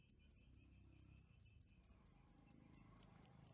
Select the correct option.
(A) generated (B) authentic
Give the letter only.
B